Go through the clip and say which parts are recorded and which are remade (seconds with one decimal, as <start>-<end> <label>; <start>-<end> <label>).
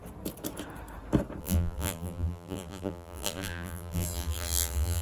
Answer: 0.0-1.4 recorded; 1.4-5.0 remade